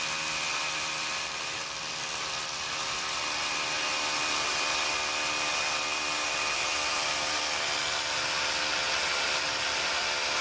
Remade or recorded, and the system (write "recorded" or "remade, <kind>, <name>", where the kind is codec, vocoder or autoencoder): recorded